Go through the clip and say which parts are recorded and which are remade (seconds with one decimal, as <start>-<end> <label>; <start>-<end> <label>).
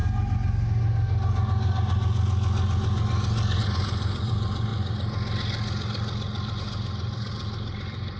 0.0-3.6 recorded; 3.6-4.7 remade; 4.7-6.6 recorded; 6.6-8.2 remade